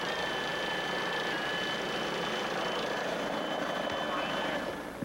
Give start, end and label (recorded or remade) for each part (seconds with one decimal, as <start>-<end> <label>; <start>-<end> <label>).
0.0-5.0 recorded